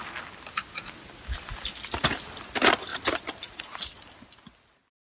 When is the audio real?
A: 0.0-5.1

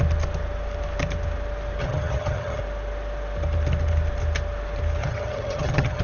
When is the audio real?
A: 0.0-1.8; 2.6-5.0

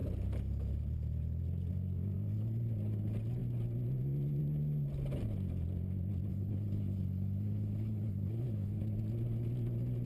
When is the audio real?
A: 0.0-6.3; 8.8-10.1

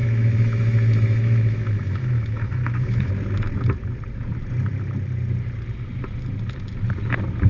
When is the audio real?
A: 3.1-7.5

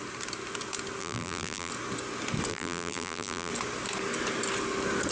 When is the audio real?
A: 0.0-1.0; 1.7-2.5; 3.5-5.1